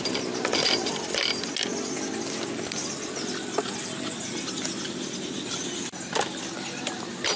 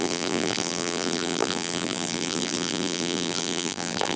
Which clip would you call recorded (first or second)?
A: first